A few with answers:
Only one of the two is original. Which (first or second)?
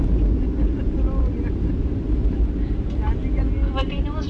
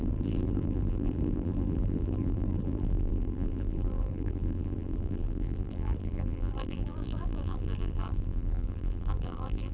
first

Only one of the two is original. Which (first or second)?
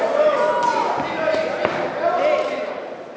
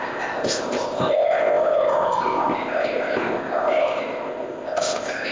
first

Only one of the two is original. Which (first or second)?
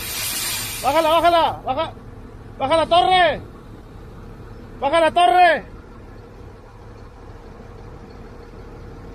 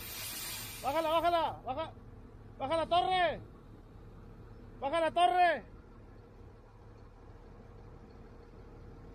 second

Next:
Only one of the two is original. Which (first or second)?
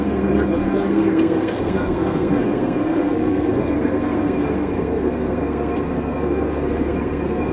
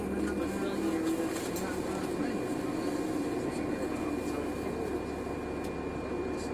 second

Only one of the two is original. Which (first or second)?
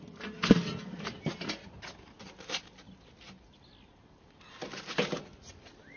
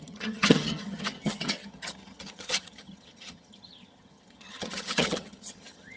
first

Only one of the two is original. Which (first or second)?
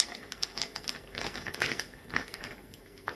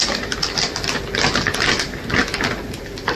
second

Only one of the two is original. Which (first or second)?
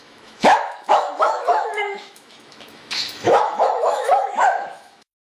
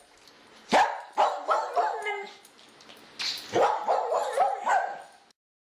second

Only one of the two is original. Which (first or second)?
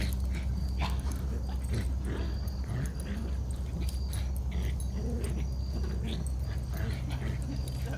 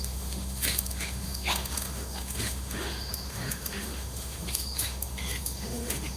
first